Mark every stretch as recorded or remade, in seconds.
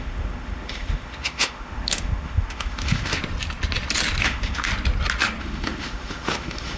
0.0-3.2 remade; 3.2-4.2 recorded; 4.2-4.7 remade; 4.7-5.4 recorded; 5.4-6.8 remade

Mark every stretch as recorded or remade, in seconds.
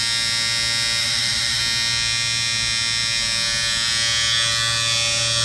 0.0-1.0 recorded; 1.0-1.6 remade; 1.6-5.4 recorded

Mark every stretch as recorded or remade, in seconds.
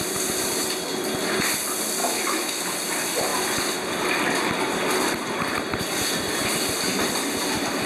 0.0-2.0 recorded; 2.0-2.6 remade; 2.6-7.9 recorded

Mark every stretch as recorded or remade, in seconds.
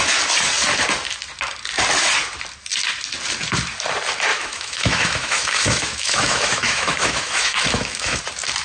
0.0-4.3 recorded; 4.3-8.2 remade; 8.2-8.6 recorded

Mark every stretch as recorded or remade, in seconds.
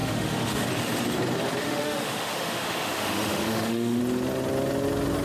0.0-0.7 remade; 0.7-1.6 recorded; 1.6-4.0 remade; 4.0-5.2 recorded